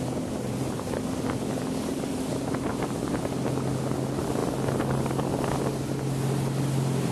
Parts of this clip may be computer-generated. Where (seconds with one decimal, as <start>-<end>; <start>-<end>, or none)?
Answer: none